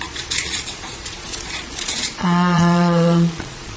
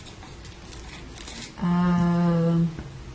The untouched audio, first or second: second